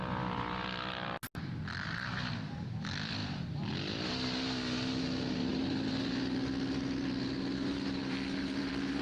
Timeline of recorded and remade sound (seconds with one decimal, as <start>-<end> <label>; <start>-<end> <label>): 0.0-3.2 recorded; 3.2-4.1 remade; 4.1-5.5 recorded; 5.5-6.0 remade; 6.0-8.0 recorded; 8.0-9.0 remade